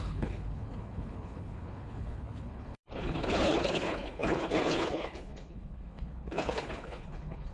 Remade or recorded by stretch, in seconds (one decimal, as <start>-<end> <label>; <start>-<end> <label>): 0.0-7.5 remade